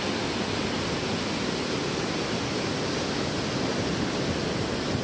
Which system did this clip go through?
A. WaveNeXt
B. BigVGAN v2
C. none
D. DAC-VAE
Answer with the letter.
C